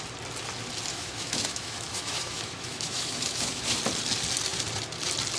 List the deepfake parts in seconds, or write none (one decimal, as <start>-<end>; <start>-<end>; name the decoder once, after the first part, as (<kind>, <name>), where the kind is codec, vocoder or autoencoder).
0.9-3.8 (autoencoder, DAC-VAE)